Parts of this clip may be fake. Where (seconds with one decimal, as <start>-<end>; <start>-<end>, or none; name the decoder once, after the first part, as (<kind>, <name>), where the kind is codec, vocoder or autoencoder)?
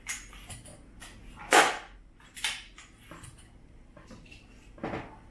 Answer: none